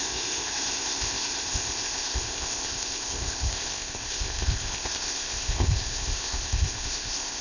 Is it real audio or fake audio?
fake